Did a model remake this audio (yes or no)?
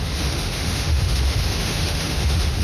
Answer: yes